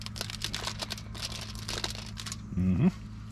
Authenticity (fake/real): real